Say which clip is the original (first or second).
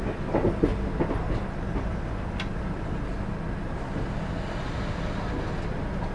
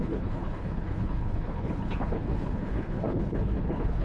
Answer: first